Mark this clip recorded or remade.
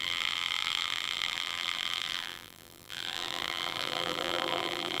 remade